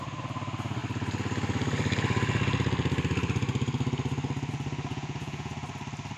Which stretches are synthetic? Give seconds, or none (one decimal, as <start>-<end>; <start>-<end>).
4.9-5.5